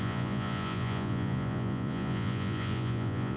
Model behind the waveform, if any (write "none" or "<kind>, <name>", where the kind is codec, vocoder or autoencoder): vocoder, Vocos